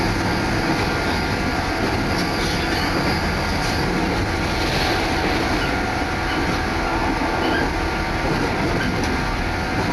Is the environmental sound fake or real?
real